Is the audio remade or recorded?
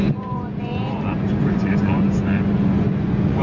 remade